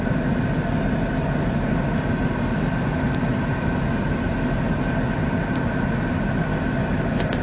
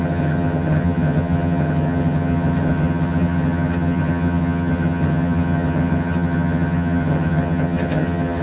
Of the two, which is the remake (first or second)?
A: second